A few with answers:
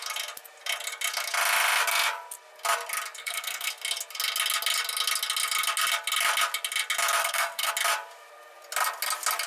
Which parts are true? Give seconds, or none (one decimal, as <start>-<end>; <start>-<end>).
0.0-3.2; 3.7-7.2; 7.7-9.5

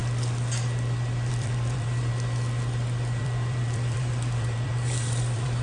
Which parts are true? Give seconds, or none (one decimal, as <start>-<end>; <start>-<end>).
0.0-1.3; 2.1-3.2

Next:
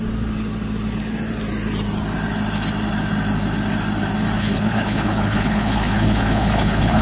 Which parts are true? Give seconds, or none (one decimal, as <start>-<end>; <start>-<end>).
0.0-4.4